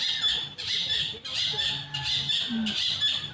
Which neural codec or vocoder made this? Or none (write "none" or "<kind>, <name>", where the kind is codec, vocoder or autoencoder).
none